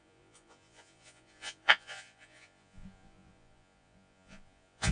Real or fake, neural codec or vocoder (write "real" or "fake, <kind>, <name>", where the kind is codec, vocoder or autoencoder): fake, vocoder, Vocos